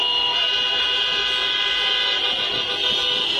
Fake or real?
fake